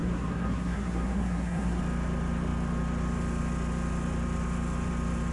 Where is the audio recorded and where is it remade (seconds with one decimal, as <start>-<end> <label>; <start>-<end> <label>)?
0.0-1.8 remade; 1.8-5.3 recorded